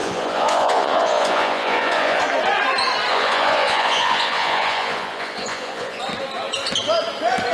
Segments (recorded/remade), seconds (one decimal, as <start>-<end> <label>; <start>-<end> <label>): 0.0-2.2 remade; 2.2-3.1 recorded; 3.1-6.0 remade; 6.0-7.5 recorded